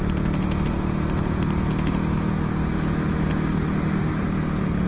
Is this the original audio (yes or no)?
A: yes